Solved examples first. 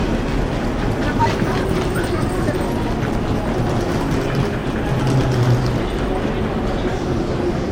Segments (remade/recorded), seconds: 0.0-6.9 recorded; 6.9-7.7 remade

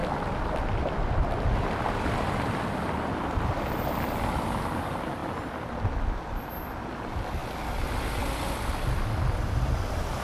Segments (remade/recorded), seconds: 0.0-4.6 remade; 4.6-5.2 recorded; 5.2-5.7 remade; 5.7-10.2 recorded

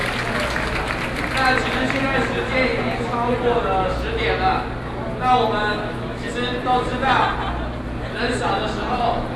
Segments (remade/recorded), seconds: 0.0-5.7 recorded; 5.7-6.3 remade; 6.3-9.4 recorded

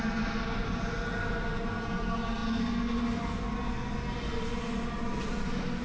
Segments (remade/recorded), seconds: 0.0-5.8 recorded

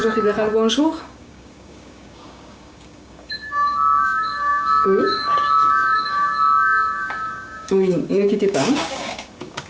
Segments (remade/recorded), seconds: 0.0-0.8 recorded; 0.8-9.7 remade

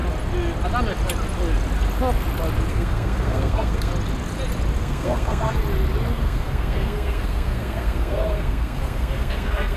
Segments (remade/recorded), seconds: 0.0-2.7 recorded; 2.7-3.9 remade; 3.9-4.8 recorded; 4.8-5.6 remade; 5.6-6.1 recorded; 6.1-9.8 remade